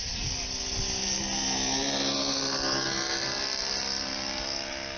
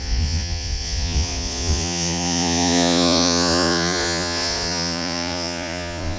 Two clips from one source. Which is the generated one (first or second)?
second